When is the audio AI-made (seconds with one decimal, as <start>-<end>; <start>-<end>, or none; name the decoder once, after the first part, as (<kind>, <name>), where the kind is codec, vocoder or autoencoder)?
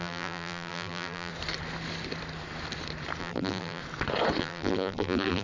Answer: 0.0-1.3 (vocoder, BigVGAN v2); 3.2-3.8; 4.4-5.4